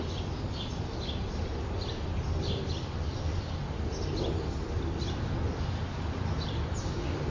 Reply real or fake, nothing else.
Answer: real